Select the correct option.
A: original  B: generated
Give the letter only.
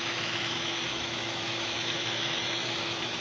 B